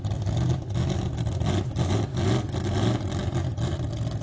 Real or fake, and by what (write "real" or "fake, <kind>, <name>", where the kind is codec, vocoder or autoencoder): real